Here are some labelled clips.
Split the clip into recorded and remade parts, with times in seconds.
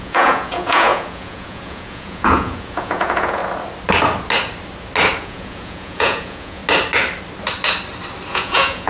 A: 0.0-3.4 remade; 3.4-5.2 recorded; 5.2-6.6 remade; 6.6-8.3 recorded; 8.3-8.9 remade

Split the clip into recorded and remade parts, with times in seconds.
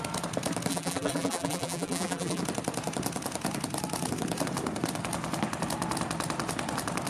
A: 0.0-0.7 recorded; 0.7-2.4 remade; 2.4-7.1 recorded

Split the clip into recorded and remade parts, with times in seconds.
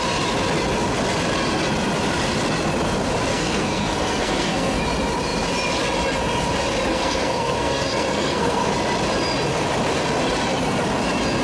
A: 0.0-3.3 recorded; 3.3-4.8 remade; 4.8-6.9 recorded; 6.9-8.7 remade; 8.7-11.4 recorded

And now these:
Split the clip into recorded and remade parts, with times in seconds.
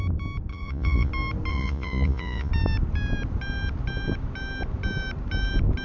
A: 0.0-0.5 recorded; 0.5-1.1 remade; 1.1-1.5 recorded; 1.5-2.5 remade; 2.5-5.8 recorded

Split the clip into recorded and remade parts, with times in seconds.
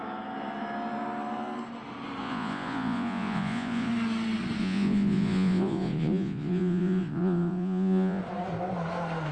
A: 0.0-2.2 recorded; 2.2-3.9 remade; 3.9-4.6 recorded; 4.6-8.2 remade; 8.2-9.3 recorded